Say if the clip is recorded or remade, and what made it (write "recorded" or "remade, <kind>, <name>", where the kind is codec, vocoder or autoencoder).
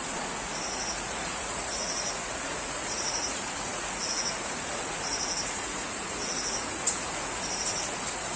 remade, vocoder, Vocos